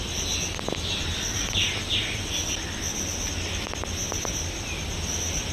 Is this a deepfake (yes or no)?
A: no